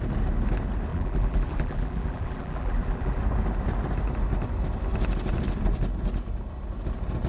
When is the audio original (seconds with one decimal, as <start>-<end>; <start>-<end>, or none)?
0.0-0.9; 3.2-7.3